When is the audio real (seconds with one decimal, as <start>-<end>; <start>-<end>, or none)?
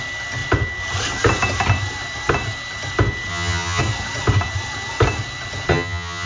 0.0-3.3; 3.8-5.7